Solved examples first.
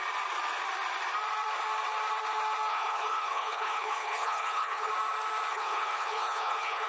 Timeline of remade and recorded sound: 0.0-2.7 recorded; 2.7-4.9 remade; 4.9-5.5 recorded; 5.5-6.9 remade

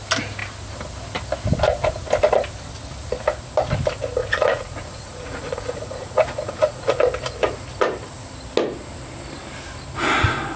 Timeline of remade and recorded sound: 0.0-4.2 recorded; 4.2-7.0 remade; 7.0-10.6 recorded

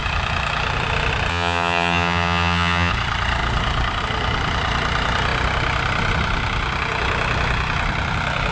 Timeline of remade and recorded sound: 0.0-1.3 recorded; 1.3-2.9 remade; 2.9-8.5 recorded

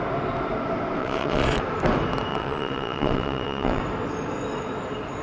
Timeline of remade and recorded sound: 0.0-1.0 recorded; 1.0-1.6 remade; 1.6-2.3 recorded; 2.3-3.8 remade; 3.8-5.2 recorded

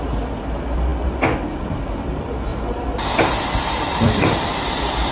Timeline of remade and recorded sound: 0.0-2.5 recorded; 2.5-4.3 remade; 4.3-5.1 recorded

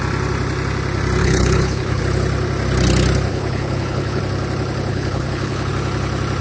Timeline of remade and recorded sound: 0.0-1.2 recorded; 1.2-2.0 remade; 2.0-3.3 recorded; 3.3-4.2 remade; 4.2-4.9 recorded; 4.9-5.7 remade; 5.7-6.4 recorded

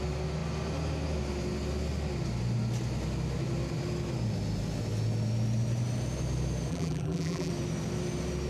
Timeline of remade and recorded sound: 0.0-6.7 recorded; 6.7-7.5 remade; 7.5-8.5 recorded

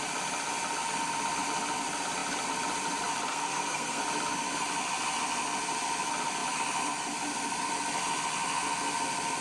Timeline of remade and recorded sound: 0.0-3.3 recorded; 3.3-4.0 remade; 4.0-9.4 recorded